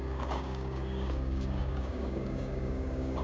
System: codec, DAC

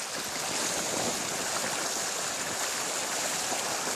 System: none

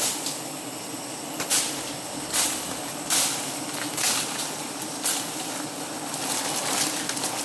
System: none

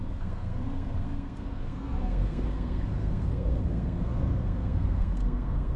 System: codec, SNAC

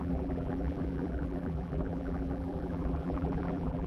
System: vocoder, BigVGAN v2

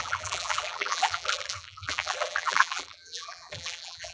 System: vocoder, BigVGAN v2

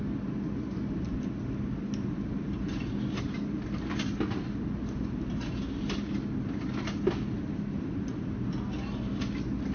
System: none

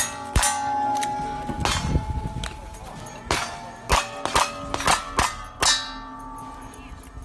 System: none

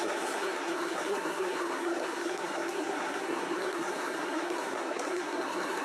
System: codec, SNAC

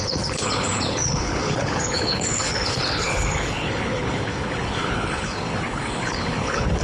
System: codec, HILCodec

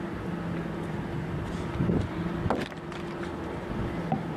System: none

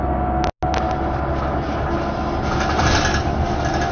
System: none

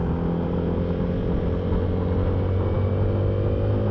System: none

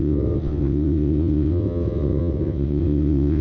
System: vocoder, WaveNeXt